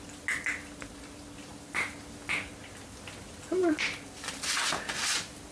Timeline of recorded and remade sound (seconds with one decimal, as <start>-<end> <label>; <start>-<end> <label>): 0.0-5.5 recorded